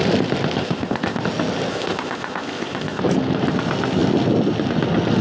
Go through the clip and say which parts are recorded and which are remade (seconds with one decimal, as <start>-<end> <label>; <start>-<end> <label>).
0.0-0.6 recorded; 0.6-1.2 remade; 1.2-1.7 recorded; 1.7-3.0 remade; 3.0-5.2 recorded